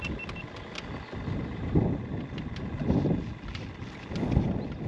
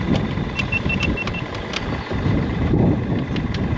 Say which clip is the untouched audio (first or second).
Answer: first